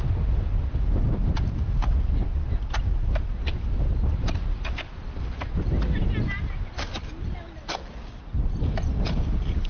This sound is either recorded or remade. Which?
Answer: recorded